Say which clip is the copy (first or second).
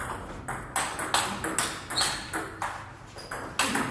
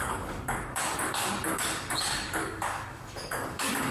second